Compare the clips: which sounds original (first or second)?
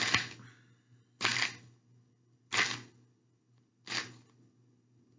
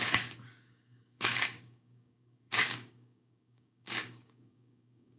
first